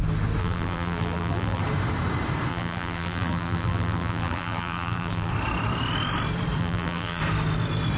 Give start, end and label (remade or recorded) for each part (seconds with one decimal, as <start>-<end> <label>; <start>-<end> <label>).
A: 0.0-0.4 recorded; 0.4-1.6 remade; 1.6-2.5 recorded; 2.5-5.3 remade; 5.3-6.6 recorded; 6.6-7.2 remade; 7.2-8.0 recorded